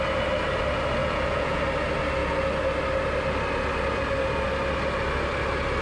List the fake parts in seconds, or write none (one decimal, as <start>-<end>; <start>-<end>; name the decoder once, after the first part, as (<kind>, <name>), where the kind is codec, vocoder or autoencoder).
1.0-1.6 (vocoder, Vocos)